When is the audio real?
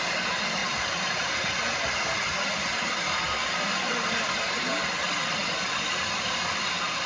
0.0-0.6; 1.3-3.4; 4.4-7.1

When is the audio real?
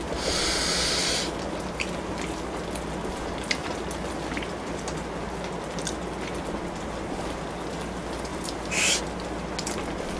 0.0-8.3; 9.0-10.2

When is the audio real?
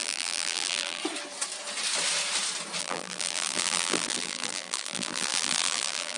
1.0-2.8